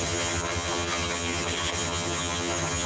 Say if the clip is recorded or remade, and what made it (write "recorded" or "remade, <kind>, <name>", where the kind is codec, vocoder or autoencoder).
remade, vocoder, HiFi-GAN